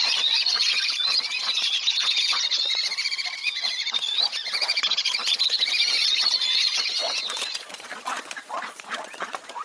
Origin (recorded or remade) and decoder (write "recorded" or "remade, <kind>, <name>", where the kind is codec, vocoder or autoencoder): remade, vocoder, Vocos